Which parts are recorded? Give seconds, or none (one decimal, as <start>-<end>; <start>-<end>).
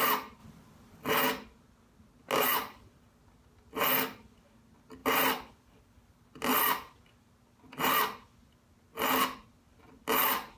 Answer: 0.0-0.4; 1.1-2.5; 3.2-5.0; 6.3-10.6